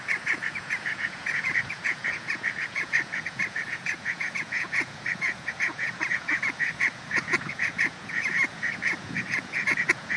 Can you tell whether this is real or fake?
fake